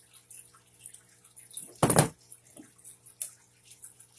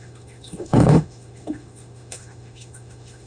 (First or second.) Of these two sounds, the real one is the first